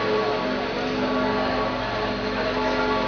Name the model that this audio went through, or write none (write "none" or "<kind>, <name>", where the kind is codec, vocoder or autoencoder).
none